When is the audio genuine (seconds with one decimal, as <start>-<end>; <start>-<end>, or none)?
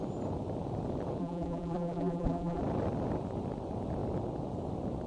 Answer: 0.0-1.2; 2.6-5.1